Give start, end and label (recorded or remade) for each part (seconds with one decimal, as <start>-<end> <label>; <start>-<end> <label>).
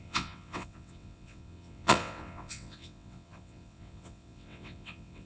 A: 0.0-5.3 remade